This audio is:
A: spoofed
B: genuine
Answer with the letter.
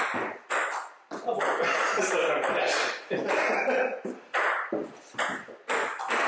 B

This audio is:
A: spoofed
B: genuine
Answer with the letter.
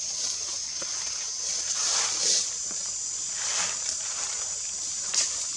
B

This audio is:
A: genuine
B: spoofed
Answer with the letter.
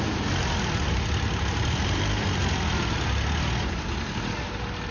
A